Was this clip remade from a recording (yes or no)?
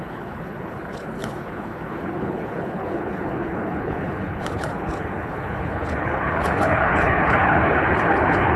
yes